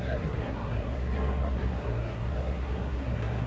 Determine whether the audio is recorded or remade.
remade